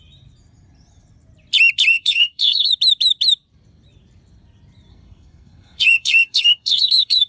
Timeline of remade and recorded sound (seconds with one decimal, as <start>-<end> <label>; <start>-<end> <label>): 0.0-1.9 recorded; 1.9-2.7 remade; 2.7-4.9 recorded; 4.9-7.3 remade